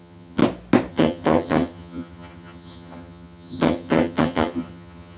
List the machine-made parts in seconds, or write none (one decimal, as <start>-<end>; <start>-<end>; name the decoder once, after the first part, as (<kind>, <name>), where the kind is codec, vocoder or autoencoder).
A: 0.0-0.4 (vocoder, HiFi-GAN); 0.9-5.2